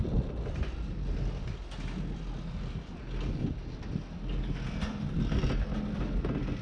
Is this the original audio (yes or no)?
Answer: yes